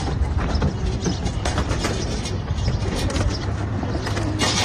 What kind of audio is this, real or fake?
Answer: real